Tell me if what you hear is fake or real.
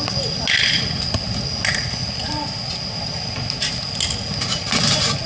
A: real